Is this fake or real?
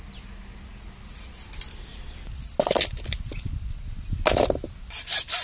real